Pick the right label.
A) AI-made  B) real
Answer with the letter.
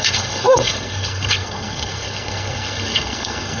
A